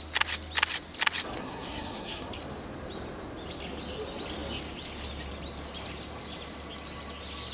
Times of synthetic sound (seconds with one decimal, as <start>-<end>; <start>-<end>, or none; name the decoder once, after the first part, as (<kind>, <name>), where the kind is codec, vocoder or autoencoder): 1.4-2.3 (codec, SNAC)